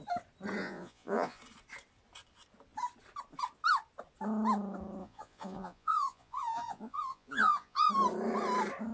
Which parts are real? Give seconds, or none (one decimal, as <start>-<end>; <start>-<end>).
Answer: 0.0-0.6; 1.4-5.0; 7.9-8.9